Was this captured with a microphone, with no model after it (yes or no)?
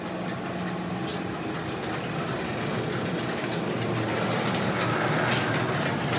yes